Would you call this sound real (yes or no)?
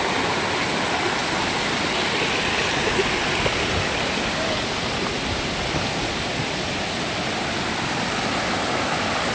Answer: yes